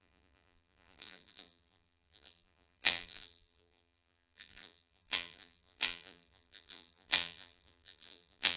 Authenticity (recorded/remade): remade